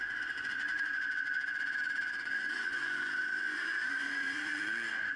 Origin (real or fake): fake